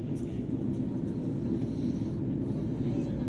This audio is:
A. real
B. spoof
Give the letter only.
A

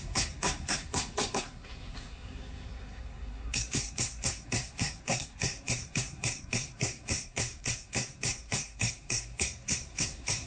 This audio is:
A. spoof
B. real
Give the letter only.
A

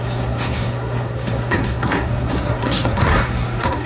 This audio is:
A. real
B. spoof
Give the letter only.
B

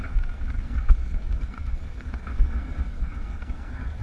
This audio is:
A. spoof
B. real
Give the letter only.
A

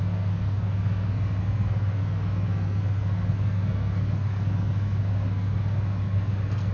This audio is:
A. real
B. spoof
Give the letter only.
B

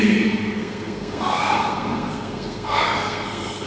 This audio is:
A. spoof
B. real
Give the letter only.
A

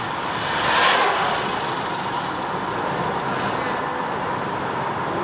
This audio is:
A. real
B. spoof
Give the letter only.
A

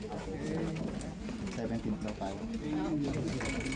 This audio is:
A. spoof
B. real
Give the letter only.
B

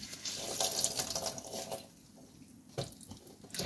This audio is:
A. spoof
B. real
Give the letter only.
B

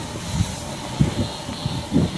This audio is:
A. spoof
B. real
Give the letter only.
B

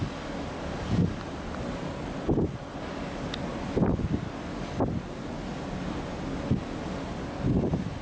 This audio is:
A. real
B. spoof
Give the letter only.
A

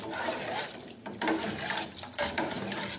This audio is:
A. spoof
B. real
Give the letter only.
B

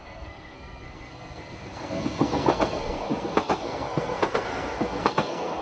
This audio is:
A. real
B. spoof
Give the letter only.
B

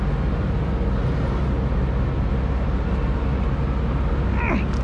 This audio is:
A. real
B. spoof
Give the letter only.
A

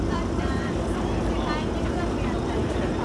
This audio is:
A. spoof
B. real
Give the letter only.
B